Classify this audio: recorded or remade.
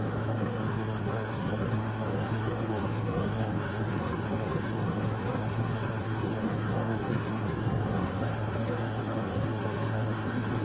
remade